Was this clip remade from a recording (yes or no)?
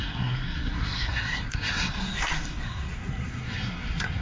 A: yes